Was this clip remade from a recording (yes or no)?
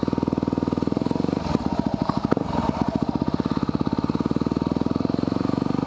no